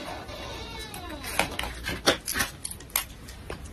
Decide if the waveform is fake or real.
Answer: real